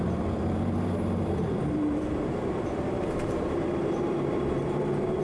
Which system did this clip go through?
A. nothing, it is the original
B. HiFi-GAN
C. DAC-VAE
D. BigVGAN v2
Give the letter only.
D